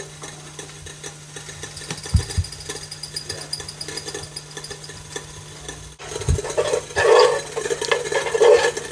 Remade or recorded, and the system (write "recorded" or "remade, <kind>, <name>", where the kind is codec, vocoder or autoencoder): recorded